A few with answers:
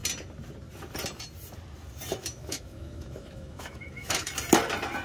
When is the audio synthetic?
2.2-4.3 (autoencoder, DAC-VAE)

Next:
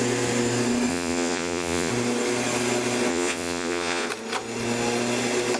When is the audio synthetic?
0.9-1.9 (vocoder, Vocos); 3.1-4.1

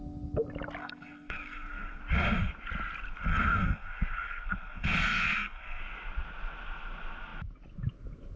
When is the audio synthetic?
0.8-2.0 (codec, SNAC); 3.3-5.8